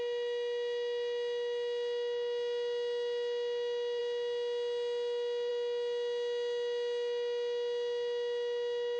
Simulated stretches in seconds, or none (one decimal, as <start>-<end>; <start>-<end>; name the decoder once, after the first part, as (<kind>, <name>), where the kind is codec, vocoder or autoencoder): none